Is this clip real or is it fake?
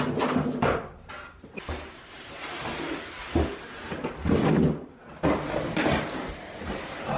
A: real